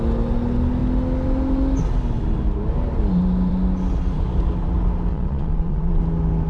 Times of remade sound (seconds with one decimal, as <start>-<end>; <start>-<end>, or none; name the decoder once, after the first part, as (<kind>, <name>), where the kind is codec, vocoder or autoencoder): 5.1-6.0 (vocoder, Vocos)